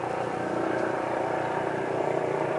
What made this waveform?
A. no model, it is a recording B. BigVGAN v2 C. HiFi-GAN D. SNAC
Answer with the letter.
B